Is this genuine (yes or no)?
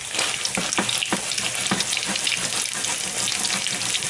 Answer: yes